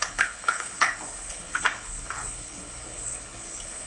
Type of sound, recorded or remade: remade